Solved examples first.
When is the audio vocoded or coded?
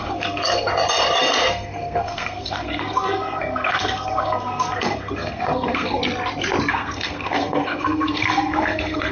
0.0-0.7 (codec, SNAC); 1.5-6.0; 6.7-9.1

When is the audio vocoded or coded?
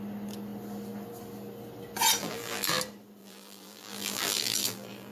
2.2-2.8 (vocoder, BigVGAN v2); 3.2-5.1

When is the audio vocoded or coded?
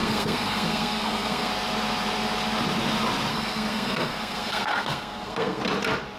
0.0-1.5 (codec, SNAC); 3.3-5.6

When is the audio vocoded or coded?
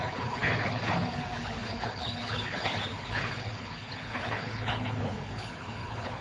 0.0-6.2 (codec, HILCodec)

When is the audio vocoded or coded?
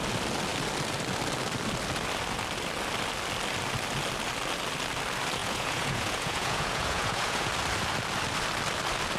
5.4-7.5 (vocoder, Vocos)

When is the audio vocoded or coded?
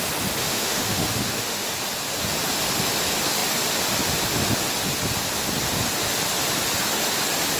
0.4-1.7 (autoencoder, DAC-VAE)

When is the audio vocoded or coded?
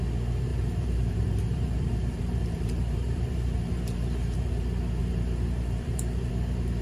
0.5-4.6 (vocoder, BigVGAN v2); 5.0-6.3